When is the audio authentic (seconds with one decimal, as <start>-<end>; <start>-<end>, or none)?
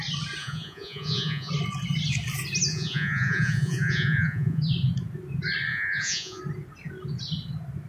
0.0-0.4; 1.5-2.7; 4.6-5.7; 6.4-7.9